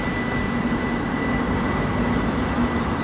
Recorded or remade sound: recorded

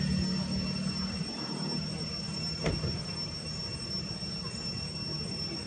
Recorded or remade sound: recorded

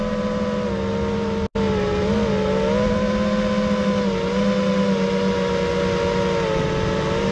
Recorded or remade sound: recorded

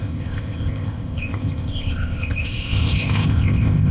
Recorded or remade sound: remade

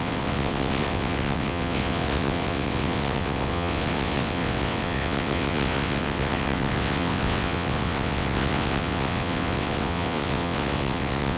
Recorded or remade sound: remade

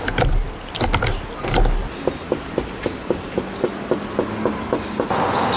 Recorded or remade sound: recorded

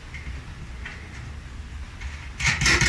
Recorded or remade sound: recorded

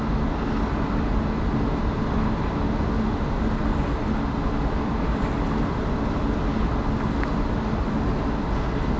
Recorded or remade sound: recorded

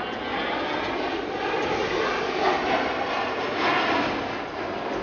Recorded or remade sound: recorded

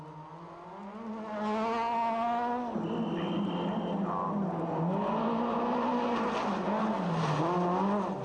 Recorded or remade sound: recorded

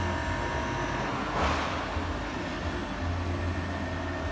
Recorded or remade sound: recorded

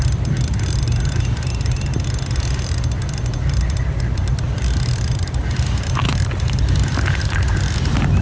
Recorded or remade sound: recorded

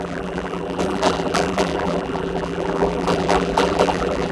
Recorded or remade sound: remade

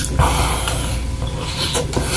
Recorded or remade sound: recorded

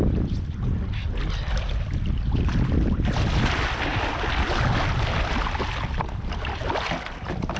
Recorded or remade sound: recorded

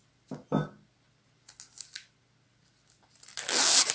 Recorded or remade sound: recorded